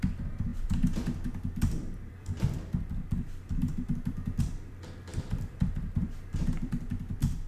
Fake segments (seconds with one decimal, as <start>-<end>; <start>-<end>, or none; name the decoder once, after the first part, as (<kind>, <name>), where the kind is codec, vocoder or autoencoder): 0.0-7.5 (vocoder, BigVGAN v2)